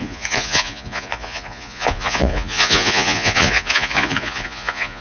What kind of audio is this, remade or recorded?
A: remade